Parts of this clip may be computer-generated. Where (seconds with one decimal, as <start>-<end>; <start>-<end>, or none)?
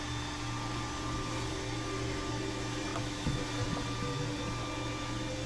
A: 2.9-3.4